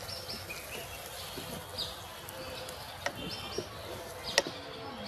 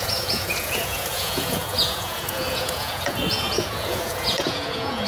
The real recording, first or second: first